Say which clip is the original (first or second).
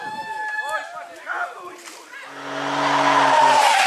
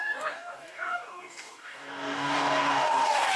first